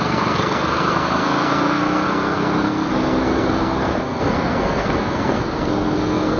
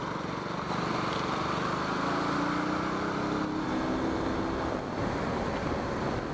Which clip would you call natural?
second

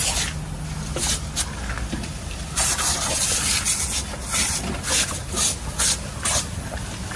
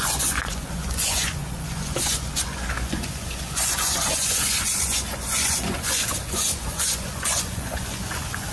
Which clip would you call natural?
first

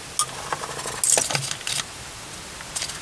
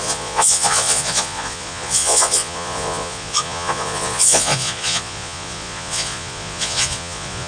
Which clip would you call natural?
first